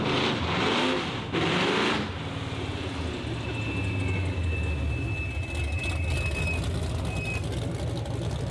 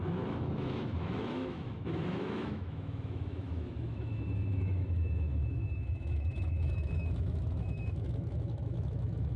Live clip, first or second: first